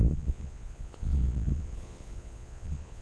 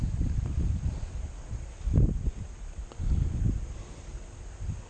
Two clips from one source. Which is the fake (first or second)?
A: first